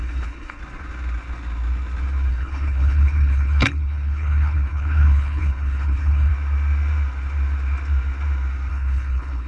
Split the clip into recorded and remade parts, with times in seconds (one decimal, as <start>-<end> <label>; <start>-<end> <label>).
0.0-0.6 remade; 0.6-2.3 recorded; 2.3-6.3 remade; 6.3-8.7 recorded; 8.7-9.5 remade